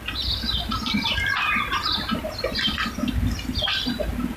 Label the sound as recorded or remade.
recorded